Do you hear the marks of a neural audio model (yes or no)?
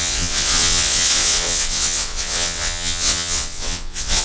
yes